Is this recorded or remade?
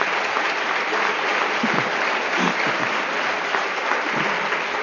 recorded